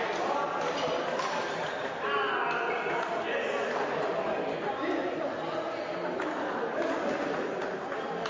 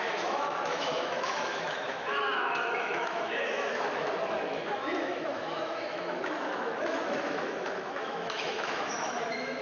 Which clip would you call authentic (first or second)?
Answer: first